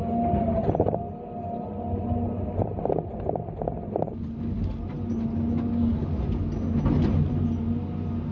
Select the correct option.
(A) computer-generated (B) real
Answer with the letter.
B